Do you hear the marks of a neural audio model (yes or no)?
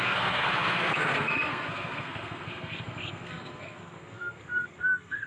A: yes